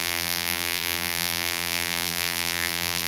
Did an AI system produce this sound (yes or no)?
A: yes